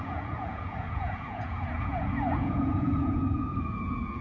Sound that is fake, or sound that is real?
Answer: fake